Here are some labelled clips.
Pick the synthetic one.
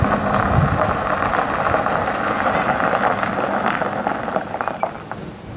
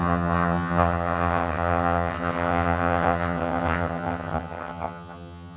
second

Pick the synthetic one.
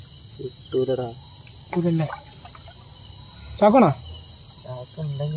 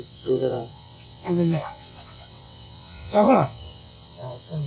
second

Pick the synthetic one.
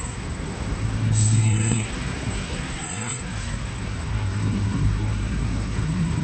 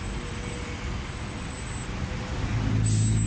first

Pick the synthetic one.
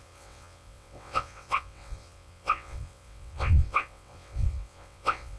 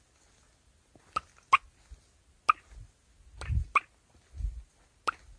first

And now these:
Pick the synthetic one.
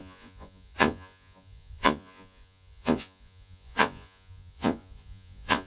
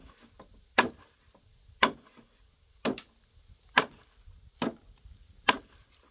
first